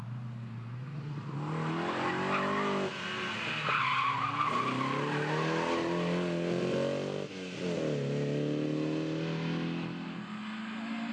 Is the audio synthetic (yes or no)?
no